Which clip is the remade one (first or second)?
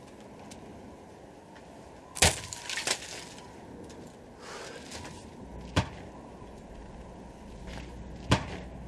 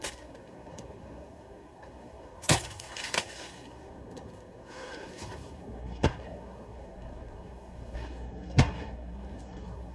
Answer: second